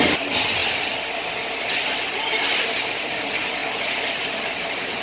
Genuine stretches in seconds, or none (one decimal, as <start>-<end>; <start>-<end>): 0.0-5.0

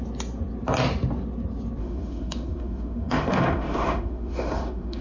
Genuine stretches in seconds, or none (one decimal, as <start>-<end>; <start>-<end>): 0.0-1.8

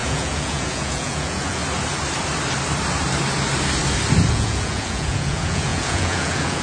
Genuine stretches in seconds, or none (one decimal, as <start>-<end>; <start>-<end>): 1.6-4.3

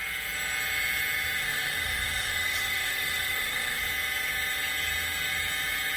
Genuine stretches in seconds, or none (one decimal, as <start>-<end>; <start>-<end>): 0.0-1.4; 3.9-6.0